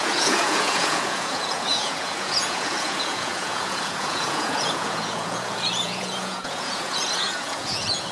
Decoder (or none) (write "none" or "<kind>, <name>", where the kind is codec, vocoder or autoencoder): vocoder, Vocos